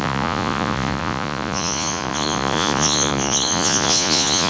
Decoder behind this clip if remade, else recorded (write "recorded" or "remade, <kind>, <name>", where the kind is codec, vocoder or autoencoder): remade, vocoder, Vocos